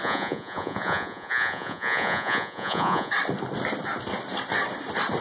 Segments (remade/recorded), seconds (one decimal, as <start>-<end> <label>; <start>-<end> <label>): 0.0-3.1 remade; 3.1-5.2 recorded